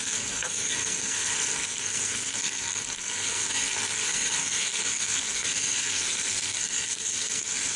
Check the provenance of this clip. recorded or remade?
remade